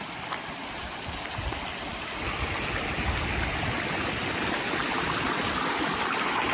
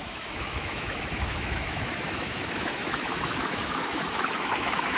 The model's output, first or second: second